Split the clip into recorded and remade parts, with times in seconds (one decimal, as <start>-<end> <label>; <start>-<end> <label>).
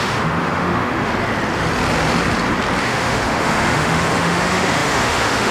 0.0-1.1 remade; 1.1-2.8 recorded; 2.8-5.5 remade